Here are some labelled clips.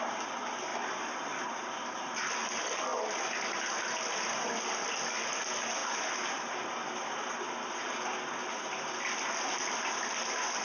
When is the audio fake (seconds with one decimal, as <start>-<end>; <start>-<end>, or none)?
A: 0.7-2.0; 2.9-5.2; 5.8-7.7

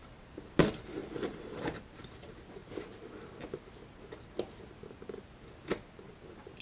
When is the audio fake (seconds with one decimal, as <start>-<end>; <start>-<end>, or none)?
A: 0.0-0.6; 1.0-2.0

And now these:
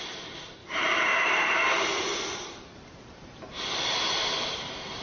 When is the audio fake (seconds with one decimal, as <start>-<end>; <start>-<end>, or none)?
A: 0.6-3.6